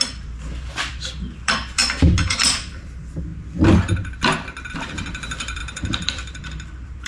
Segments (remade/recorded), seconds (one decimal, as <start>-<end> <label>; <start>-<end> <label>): 0.0-1.8 remade; 1.8-2.5 recorded; 2.5-3.3 remade; 3.3-4.7 recorded; 4.7-7.1 remade